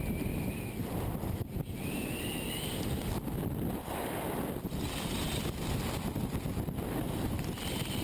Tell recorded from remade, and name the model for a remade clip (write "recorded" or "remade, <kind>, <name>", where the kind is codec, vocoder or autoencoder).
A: recorded